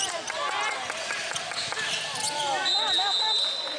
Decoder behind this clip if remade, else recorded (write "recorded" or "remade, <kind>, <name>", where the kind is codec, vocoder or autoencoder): recorded